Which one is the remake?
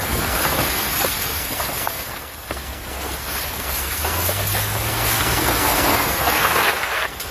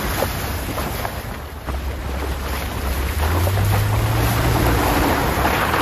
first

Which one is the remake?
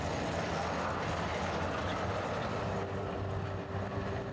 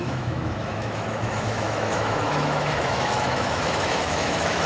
second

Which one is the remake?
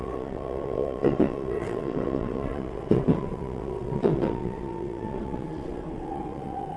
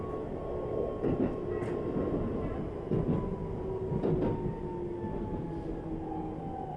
first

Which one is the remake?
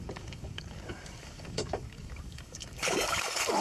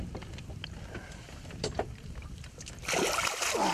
first